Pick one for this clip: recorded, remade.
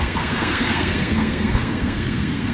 remade